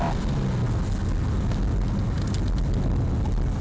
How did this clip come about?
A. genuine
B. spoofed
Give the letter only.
A